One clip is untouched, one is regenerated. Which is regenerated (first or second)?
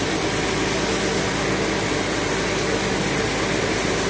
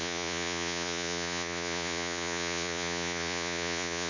second